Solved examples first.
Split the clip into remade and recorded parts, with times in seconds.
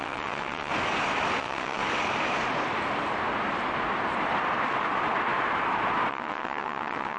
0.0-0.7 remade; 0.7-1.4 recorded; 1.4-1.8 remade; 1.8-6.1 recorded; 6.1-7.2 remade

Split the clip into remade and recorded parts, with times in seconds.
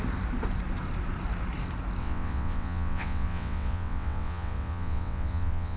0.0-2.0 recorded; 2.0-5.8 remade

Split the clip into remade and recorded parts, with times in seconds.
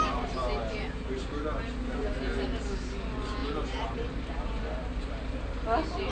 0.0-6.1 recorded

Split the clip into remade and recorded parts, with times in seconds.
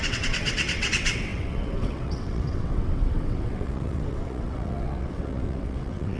0.0-6.2 remade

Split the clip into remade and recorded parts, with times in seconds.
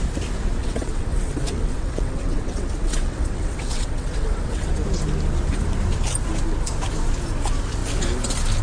0.0-0.6 recorded; 0.6-4.7 remade; 4.7-8.6 recorded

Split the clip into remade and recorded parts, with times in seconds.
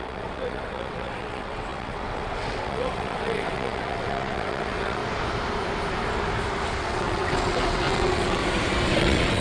0.0-5.0 remade; 5.0-6.8 recorded; 6.8-8.4 remade; 8.4-9.0 recorded; 9.0-9.4 remade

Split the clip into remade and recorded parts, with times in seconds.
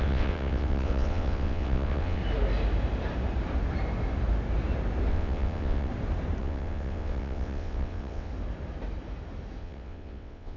0.0-2.2 remade; 2.2-5.1 recorded; 5.1-5.9 remade; 5.9-6.4 recorded; 6.4-8.3 remade; 8.3-9.6 recorded; 9.6-10.6 remade